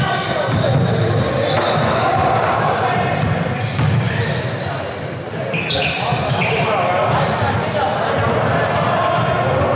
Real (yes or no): yes